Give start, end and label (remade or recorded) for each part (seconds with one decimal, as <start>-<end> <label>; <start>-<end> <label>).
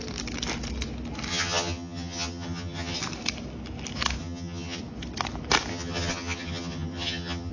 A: 0.0-1.3 recorded; 1.3-3.0 remade; 3.0-4.2 recorded; 4.2-4.8 remade; 4.8-5.7 recorded; 5.7-7.5 remade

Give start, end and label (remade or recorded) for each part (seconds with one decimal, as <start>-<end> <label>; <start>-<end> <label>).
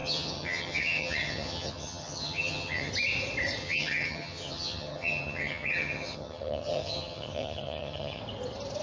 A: 0.0-2.9 remade; 2.9-3.6 recorded; 3.6-8.2 remade; 8.2-8.8 recorded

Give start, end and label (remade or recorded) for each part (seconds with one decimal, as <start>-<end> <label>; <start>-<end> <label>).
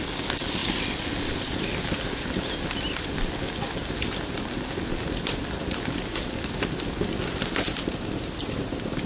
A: 0.0-9.1 recorded